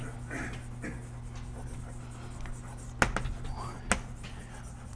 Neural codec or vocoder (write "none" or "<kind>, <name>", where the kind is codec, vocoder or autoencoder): none